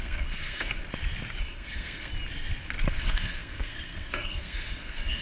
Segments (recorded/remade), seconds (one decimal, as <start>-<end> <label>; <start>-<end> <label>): 0.0-0.8 remade; 0.8-1.4 recorded; 1.4-2.1 remade; 2.1-2.9 recorded; 2.9-5.2 remade